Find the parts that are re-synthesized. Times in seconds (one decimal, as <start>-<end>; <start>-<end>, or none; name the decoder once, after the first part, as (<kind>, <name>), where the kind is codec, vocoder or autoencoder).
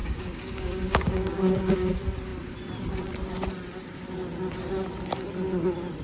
0.0-1.9 (codec, DAC)